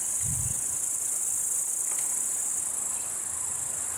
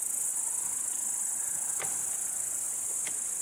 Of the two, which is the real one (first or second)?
second